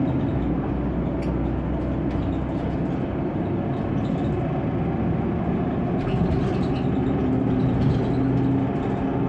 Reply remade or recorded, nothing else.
recorded